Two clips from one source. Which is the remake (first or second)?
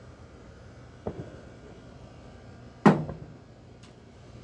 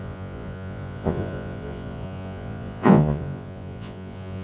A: second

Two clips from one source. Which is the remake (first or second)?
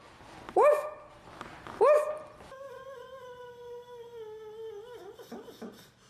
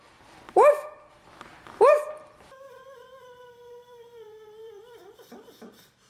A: second